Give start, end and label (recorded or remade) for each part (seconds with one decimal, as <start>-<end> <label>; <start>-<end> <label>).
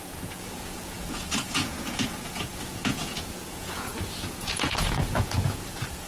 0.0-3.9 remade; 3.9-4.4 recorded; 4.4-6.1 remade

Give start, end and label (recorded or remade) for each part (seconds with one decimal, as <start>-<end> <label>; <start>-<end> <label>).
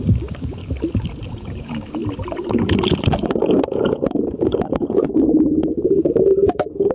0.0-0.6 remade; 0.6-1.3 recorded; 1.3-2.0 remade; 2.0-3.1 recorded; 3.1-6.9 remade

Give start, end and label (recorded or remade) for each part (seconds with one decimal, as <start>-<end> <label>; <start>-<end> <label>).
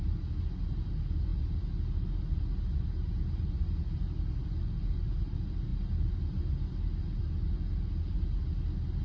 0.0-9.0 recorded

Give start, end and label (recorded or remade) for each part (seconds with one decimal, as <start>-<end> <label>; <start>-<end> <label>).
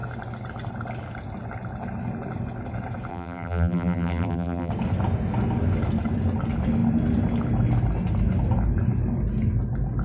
0.0-3.1 recorded; 3.1-4.7 remade; 4.7-10.0 recorded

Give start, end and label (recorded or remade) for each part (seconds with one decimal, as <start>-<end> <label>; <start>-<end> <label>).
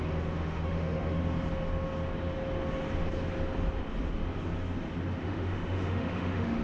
0.0-1.2 remade; 1.2-5.2 recorded; 5.2-6.6 remade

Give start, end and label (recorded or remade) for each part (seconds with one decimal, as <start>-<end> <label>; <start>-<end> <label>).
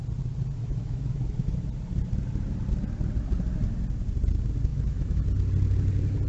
0.0-0.6 recorded; 0.6-1.2 remade; 1.2-4.7 recorded; 4.7-5.2 remade; 5.2-6.3 recorded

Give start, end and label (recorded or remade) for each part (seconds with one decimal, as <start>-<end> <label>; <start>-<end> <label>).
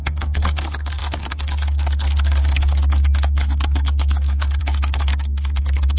0.0-6.0 remade